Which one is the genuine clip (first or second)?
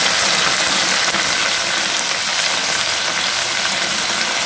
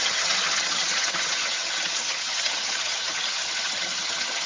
first